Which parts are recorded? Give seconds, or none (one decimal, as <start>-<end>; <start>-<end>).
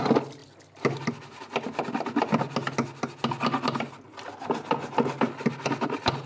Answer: 0.0-6.3